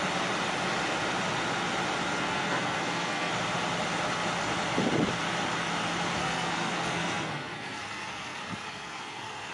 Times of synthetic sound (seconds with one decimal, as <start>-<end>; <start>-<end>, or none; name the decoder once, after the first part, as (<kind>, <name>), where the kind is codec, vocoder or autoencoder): 2.1-3.3 (codec, SNAC); 6.2-9.5